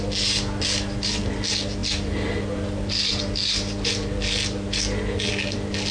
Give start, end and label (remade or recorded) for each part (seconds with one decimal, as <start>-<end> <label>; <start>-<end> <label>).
0.0-5.9 recorded

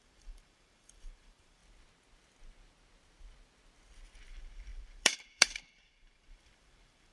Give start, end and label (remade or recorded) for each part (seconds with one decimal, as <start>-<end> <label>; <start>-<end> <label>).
0.0-1.6 remade; 1.6-4.3 recorded; 4.3-7.1 remade

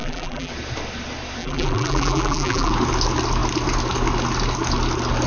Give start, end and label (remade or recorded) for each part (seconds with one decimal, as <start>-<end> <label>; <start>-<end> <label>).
0.0-0.5 remade; 0.5-1.4 recorded; 1.4-2.7 remade; 2.7-5.3 recorded

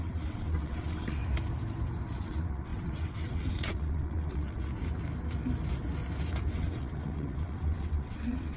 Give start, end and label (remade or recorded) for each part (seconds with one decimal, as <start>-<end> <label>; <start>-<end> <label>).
0.0-1.2 remade; 1.2-2.2 recorded; 2.2-4.7 remade; 4.7-6.5 recorded; 6.5-8.6 remade

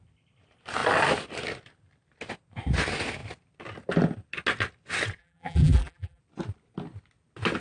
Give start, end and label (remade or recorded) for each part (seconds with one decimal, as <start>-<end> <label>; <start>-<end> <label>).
0.0-5.2 recorded; 5.2-6.2 remade; 6.2-7.6 recorded

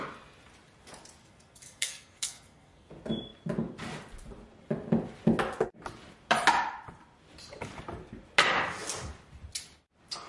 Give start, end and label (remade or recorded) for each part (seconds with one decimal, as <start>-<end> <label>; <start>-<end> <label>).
0.0-1.2 recorded; 1.2-2.9 remade; 2.9-10.3 recorded

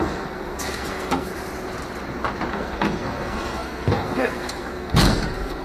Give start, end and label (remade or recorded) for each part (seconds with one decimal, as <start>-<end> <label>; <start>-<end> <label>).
0.0-1.3 remade; 1.3-2.5 recorded; 2.5-5.6 remade